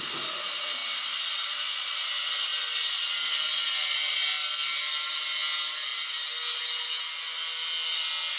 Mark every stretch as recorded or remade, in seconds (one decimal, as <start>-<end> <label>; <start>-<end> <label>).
0.0-8.4 recorded